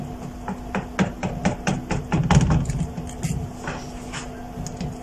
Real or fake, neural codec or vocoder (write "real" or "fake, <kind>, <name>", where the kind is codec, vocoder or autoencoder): real